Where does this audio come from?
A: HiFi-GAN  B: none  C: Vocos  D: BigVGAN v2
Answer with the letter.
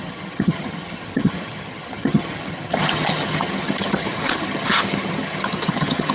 A